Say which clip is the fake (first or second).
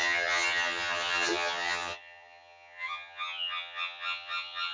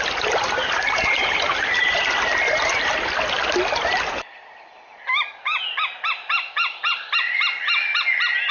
first